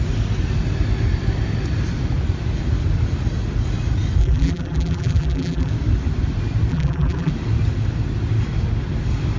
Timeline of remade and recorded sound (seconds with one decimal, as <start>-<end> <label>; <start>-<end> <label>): 0.0-4.2 recorded; 4.2-5.7 remade; 5.7-6.7 recorded; 6.7-7.3 remade; 7.3-9.4 recorded